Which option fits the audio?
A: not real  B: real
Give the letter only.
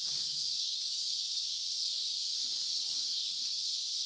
A